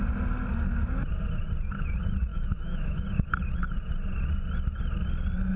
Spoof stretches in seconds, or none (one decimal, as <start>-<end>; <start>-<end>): 2.3-3.0